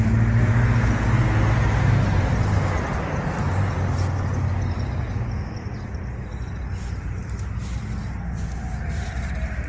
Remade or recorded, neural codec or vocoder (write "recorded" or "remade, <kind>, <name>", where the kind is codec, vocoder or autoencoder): recorded